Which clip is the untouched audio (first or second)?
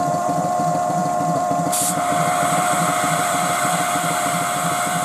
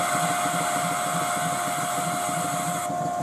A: second